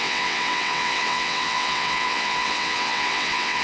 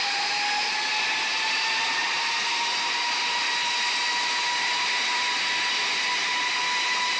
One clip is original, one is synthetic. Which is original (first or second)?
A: second